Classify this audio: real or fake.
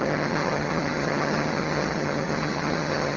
fake